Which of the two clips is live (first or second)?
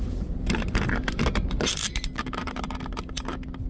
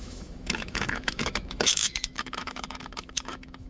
first